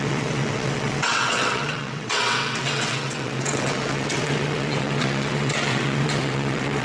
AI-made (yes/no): yes